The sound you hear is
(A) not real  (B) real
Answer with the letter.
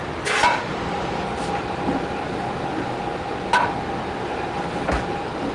B